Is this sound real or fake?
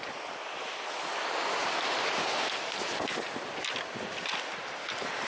real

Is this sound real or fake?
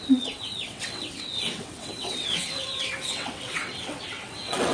fake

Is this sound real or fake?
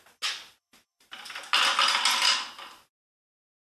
real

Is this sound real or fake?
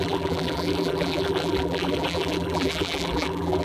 fake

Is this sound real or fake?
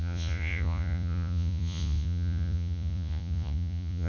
fake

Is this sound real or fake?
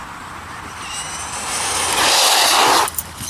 real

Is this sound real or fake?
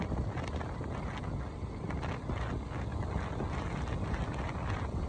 real